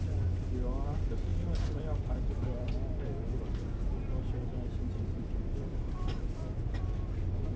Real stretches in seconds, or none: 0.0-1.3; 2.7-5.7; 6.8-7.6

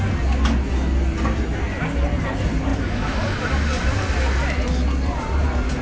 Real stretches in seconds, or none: 0.0-5.8

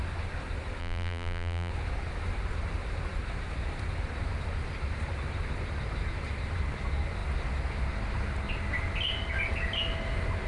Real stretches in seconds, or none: 0.0-0.8; 1.7-10.5

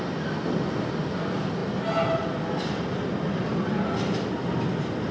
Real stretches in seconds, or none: 0.0-5.1

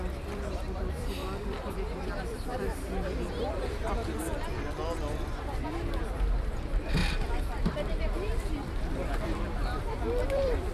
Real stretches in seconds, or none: 4.2-5.7

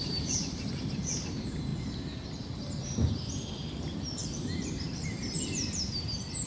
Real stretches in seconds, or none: 1.7-3.1